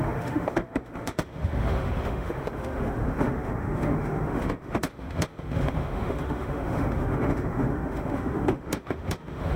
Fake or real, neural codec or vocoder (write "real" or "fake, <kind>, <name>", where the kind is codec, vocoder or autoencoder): fake, autoencoder, DAC-VAE